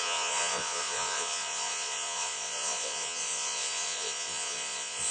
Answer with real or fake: fake